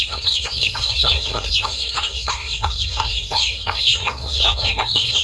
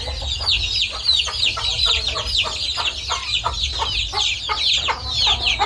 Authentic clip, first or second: second